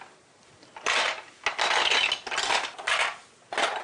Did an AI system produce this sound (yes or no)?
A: no